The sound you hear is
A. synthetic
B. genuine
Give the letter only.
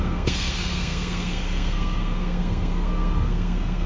A